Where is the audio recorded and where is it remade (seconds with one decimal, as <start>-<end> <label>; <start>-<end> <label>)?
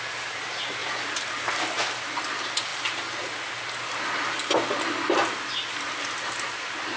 0.0-7.0 recorded